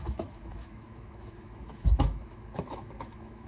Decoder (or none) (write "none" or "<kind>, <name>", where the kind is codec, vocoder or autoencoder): autoencoder, DAC-VAE